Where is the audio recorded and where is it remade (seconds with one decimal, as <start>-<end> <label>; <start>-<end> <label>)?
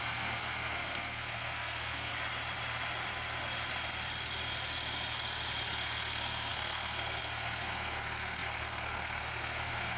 0.0-2.1 remade; 2.1-5.7 recorded; 5.7-10.0 remade